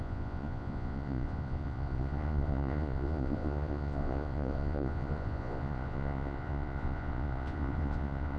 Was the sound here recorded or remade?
remade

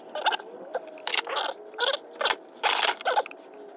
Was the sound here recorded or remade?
recorded